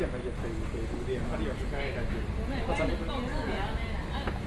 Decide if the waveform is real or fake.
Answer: real